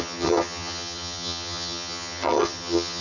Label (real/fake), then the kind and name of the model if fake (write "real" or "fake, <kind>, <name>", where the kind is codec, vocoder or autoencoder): fake, vocoder, HiFi-GAN